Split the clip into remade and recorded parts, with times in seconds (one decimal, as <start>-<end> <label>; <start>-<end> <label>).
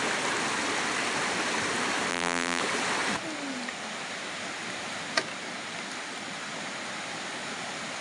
0.0-2.1 recorded; 2.1-2.6 remade; 2.6-8.0 recorded